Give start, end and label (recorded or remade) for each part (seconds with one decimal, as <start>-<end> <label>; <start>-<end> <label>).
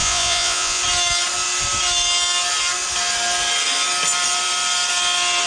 0.0-0.8 remade; 0.8-5.5 recorded